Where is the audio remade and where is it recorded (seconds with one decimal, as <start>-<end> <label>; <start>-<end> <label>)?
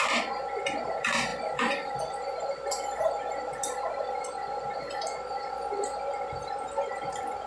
0.0-7.5 recorded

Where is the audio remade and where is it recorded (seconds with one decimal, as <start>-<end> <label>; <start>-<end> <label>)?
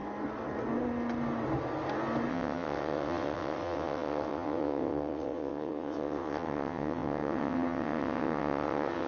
0.0-2.3 recorded; 2.3-9.1 remade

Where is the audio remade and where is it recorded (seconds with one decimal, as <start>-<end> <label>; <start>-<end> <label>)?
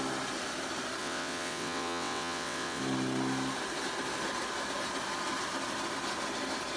0.0-1.0 recorded; 1.0-2.8 remade; 2.8-6.8 recorded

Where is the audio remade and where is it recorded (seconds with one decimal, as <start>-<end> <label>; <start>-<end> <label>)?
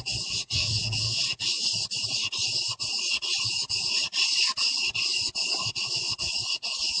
0.0-1.7 remade; 1.7-5.7 recorded; 5.7-6.3 remade; 6.3-7.0 recorded